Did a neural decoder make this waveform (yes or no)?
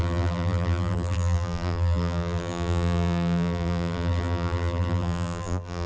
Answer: yes